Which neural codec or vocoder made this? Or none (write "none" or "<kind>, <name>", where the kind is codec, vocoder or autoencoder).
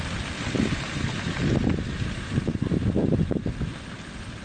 none